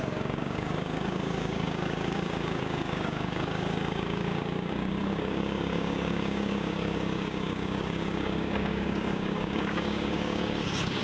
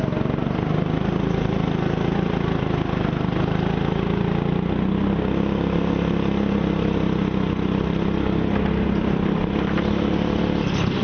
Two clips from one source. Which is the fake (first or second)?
first